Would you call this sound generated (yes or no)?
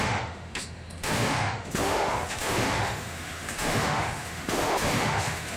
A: yes